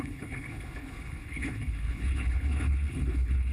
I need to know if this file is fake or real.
fake